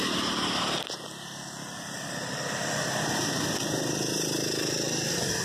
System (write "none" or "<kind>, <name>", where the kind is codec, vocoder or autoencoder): none